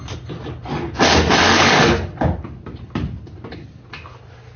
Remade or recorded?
recorded